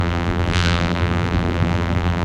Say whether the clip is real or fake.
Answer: fake